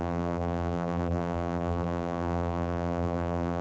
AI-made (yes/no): yes